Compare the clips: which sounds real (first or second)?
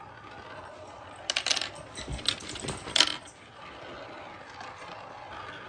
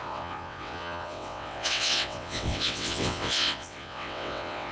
first